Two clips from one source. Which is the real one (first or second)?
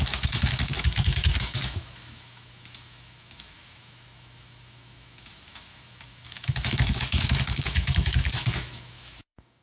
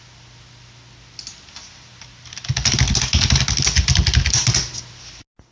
second